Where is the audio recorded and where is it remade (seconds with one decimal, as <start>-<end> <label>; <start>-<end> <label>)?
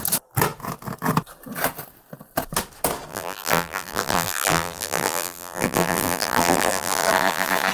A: 0.0-3.1 recorded; 3.1-7.7 remade